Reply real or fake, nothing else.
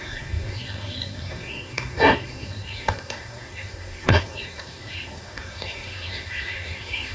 fake